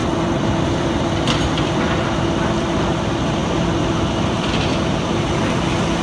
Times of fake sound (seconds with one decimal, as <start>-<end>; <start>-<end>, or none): 0.0-1.8; 3.4-5.2